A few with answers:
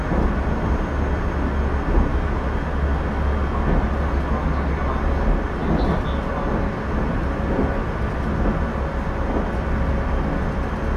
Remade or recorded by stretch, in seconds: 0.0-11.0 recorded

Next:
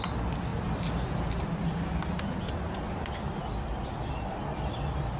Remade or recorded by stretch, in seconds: 0.0-5.2 recorded